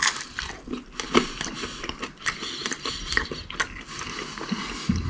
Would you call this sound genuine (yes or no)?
yes